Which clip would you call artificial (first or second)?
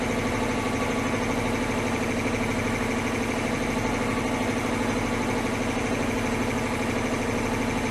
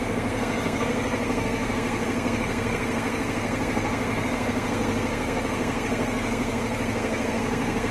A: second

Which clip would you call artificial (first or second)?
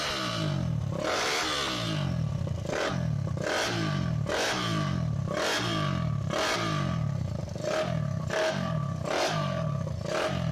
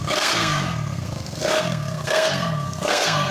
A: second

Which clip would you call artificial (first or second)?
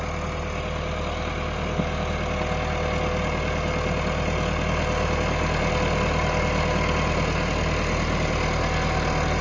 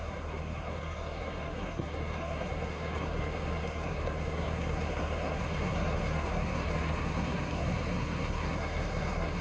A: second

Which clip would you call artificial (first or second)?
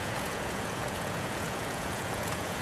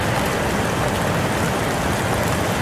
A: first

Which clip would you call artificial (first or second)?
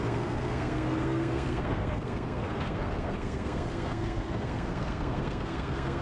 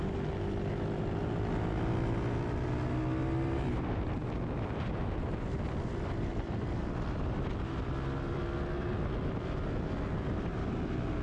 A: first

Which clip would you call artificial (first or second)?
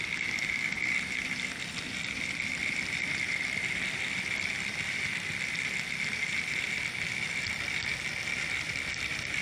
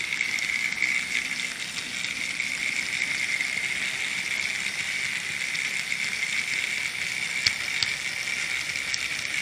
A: first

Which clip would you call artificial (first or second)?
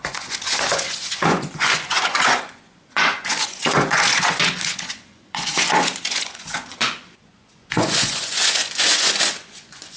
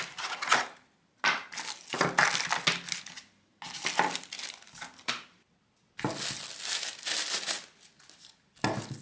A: first